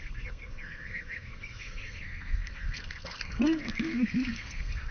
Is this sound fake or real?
fake